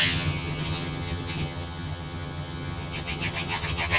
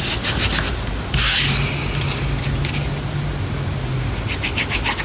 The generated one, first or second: first